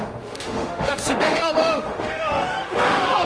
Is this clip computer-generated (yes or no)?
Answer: yes